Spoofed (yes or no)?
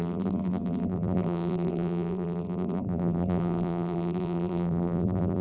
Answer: yes